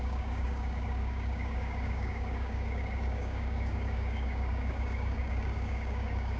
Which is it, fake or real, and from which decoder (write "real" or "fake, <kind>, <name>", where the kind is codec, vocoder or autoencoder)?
fake, codec, DAC